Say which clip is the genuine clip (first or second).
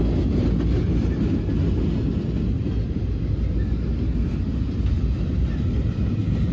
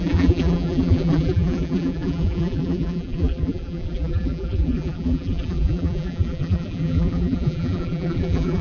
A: first